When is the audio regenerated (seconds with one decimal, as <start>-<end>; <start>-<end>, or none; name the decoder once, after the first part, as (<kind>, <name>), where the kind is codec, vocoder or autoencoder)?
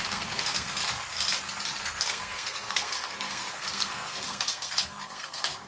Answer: 0.0-0.8 (codec, SNAC); 1.8-5.7